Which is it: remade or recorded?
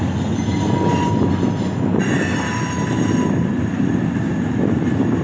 recorded